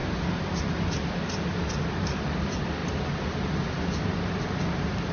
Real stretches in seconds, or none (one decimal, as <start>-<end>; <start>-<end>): 0.0-5.1